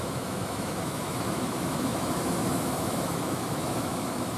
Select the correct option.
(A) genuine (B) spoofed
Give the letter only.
B